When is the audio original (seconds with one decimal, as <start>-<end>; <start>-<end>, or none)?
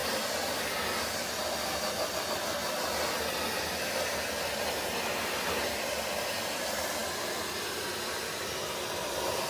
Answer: 0.0-1.5; 2.6-5.2